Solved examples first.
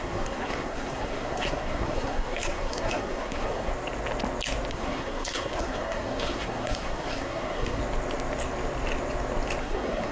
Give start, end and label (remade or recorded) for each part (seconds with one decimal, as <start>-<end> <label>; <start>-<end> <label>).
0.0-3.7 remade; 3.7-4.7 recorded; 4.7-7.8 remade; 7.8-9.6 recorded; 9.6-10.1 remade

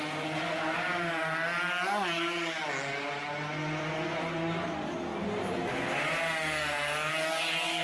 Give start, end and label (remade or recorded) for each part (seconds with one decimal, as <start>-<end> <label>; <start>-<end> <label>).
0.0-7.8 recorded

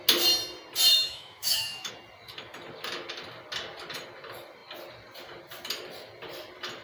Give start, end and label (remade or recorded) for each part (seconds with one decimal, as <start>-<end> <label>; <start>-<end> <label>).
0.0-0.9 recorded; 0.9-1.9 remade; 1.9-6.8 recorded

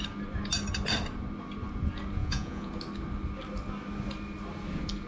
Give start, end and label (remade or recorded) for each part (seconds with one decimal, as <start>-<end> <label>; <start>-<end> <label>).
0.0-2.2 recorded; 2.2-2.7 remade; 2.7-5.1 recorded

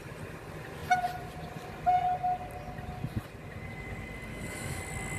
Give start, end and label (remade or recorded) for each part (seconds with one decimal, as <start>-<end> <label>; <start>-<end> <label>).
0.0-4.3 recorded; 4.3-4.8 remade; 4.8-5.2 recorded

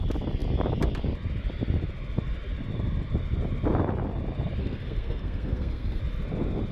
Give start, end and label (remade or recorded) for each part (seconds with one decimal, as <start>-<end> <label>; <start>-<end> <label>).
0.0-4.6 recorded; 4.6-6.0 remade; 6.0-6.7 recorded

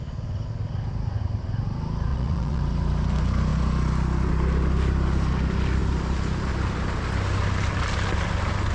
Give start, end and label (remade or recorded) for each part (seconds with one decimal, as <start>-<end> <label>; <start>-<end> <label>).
0.0-2.1 recorded; 2.1-2.6 remade; 2.6-8.7 recorded

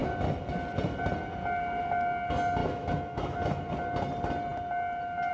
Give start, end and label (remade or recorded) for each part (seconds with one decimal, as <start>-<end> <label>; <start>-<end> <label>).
0.0-2.6 recorded; 2.6-3.7 remade; 3.7-5.3 recorded